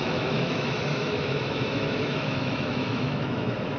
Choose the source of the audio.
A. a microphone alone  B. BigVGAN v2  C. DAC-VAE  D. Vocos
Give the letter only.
C